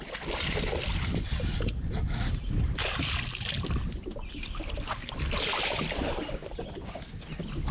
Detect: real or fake real